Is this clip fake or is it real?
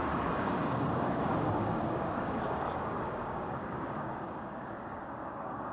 fake